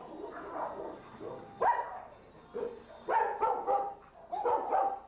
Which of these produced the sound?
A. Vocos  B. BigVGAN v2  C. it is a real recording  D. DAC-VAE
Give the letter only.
C